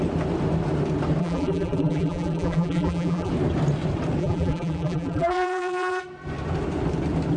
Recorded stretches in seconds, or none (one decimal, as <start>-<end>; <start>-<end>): 0.0-1.2; 3.3-4.2; 6.0-7.4